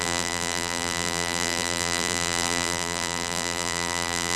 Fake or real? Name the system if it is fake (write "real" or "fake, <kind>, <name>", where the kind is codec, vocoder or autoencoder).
fake, vocoder, BigVGAN v2